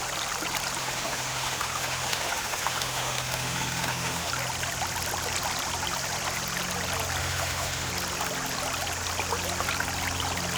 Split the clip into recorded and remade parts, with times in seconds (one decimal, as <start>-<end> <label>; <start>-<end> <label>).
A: 0.0-0.8 recorded; 0.8-4.3 remade; 4.3-7.2 recorded; 7.2-7.9 remade; 7.9-10.6 recorded